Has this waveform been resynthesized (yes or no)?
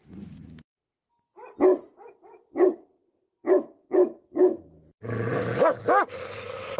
no